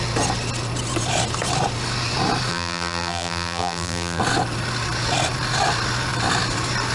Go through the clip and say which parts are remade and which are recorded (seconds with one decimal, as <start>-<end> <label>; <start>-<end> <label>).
0.0-2.5 recorded; 2.5-4.2 remade; 4.2-6.9 recorded